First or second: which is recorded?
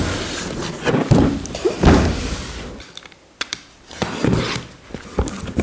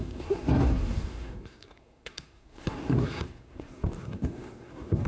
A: first